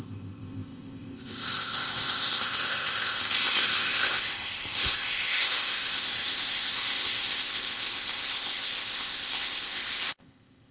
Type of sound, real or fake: fake